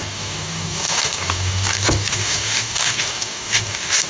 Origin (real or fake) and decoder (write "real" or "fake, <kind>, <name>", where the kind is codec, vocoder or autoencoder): fake, codec, DAC